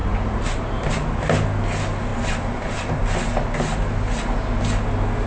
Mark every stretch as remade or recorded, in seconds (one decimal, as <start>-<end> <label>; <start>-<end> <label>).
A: 0.0-0.9 remade; 0.9-2.1 recorded; 2.1-3.0 remade; 3.0-5.3 recorded